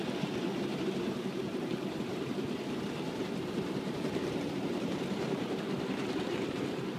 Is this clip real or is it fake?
fake